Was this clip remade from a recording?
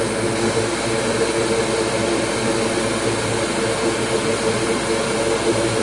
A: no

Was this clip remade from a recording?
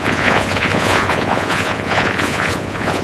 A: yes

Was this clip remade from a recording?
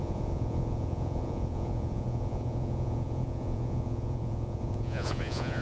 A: yes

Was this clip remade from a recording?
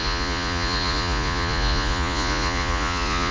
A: yes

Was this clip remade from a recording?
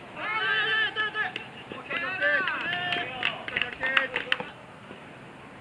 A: no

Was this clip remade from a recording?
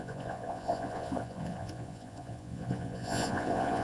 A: yes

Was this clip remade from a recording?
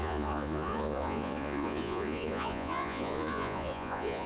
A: yes